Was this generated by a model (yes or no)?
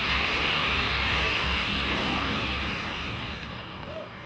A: yes